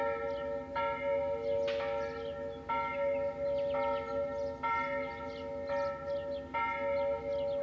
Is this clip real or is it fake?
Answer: real